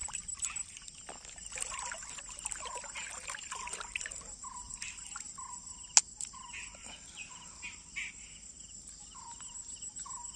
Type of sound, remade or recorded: recorded